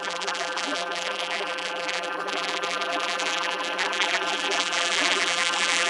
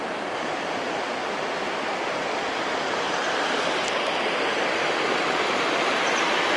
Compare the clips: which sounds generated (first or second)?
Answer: first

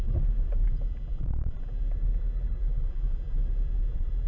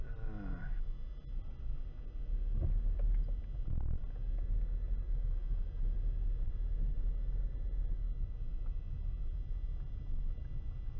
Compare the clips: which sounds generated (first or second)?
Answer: first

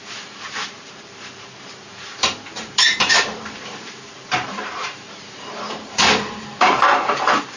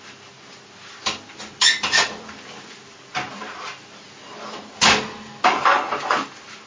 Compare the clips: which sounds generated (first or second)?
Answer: first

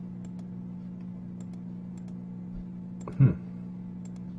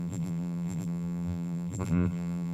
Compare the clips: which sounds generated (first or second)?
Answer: second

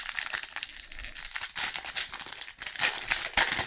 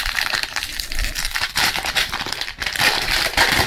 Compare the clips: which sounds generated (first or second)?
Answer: second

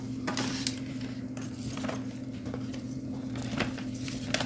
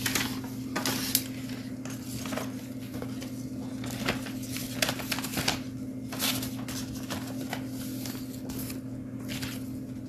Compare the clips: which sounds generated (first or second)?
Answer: first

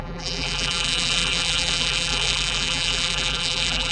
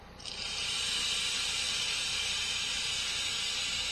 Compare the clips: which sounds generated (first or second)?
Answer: first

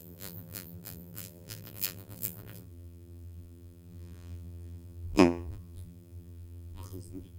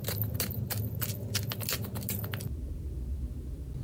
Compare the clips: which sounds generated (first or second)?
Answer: first